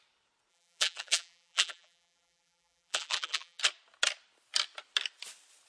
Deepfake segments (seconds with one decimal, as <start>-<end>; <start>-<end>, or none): 0.5-3.6